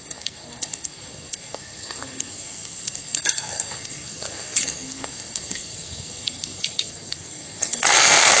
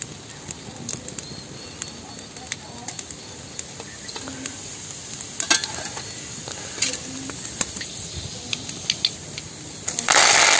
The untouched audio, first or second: second